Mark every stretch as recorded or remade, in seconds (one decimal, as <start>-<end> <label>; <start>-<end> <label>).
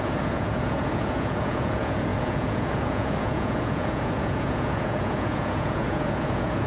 0.0-6.7 remade